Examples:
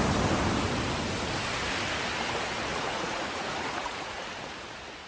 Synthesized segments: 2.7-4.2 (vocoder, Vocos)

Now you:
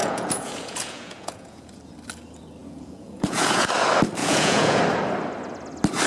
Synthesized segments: 0.0-1.8 (vocoder, Vocos); 2.6-3.7; 4.2-4.8

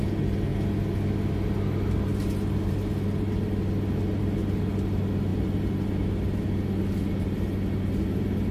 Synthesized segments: none

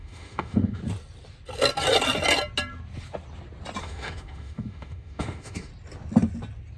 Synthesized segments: 0.0-0.8 (autoencoder, DAC-VAE); 3.8-5.7

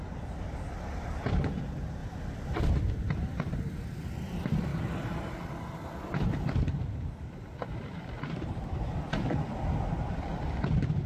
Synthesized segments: 0.0-4.7 (vocoder, BigVGAN v2); 6.0-10.3